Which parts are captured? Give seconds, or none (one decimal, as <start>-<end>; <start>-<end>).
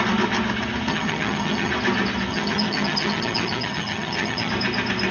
0.0-0.9; 1.7-2.3; 4.5-5.1